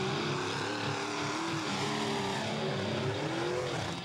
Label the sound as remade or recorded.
recorded